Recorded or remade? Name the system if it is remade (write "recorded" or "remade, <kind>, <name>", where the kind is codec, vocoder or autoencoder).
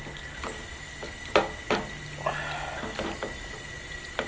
recorded